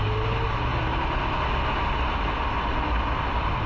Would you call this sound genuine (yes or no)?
yes